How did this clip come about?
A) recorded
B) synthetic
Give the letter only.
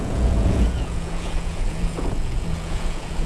B